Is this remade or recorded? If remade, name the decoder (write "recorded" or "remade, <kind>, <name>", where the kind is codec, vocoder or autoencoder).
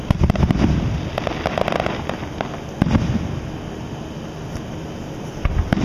recorded